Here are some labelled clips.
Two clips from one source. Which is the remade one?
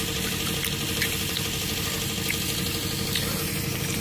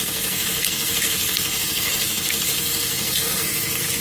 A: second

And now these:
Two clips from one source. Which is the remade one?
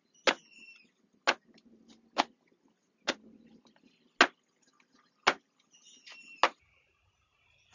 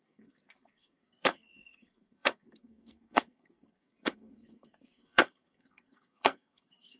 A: second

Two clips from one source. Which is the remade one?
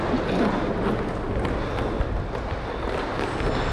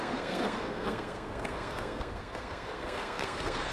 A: second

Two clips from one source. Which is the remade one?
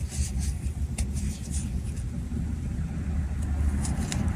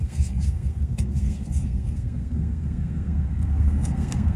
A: second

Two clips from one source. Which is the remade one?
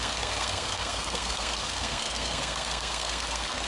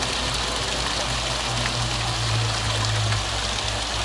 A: first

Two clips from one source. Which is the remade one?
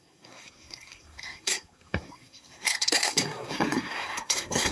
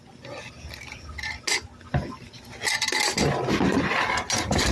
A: first